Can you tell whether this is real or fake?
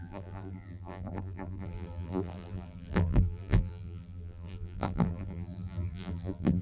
fake